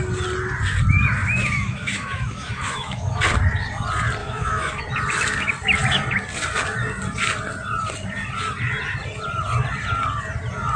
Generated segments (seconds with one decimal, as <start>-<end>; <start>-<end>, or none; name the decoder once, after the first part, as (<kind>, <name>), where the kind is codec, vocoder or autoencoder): 1.2-3.2 (autoencoder, DAC-VAE); 4.2-4.8